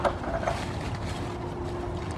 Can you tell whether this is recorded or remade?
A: recorded